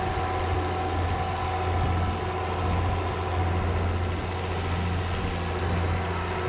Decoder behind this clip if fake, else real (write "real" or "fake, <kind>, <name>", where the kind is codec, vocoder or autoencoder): real